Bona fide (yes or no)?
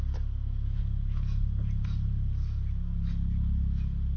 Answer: yes